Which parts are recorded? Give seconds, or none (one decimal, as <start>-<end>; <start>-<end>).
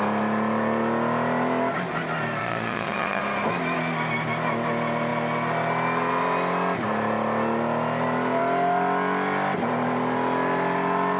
0.0-2.4; 3.2-11.2